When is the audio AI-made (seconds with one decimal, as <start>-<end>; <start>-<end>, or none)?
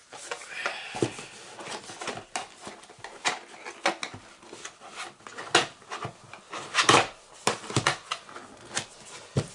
none